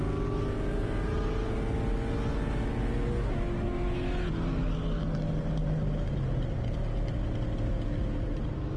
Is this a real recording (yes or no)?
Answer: yes